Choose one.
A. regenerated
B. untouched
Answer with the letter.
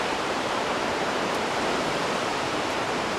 A